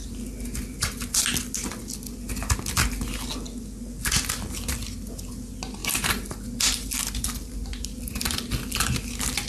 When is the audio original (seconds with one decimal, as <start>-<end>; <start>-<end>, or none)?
0.0-9.5